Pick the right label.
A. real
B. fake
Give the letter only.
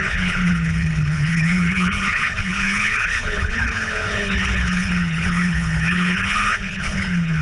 B